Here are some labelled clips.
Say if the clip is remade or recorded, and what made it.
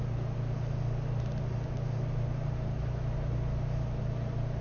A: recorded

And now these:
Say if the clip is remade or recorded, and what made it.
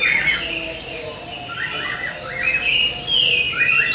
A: recorded